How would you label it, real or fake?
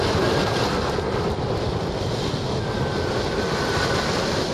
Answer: real